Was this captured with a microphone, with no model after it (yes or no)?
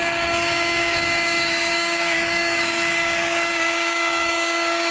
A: no